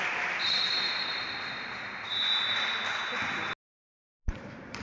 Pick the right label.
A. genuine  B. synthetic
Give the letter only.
A